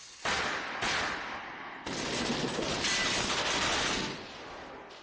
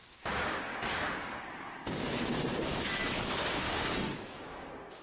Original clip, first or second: first